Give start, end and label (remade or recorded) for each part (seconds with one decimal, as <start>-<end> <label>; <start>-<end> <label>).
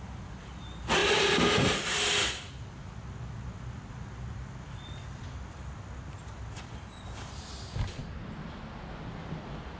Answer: 0.0-9.8 recorded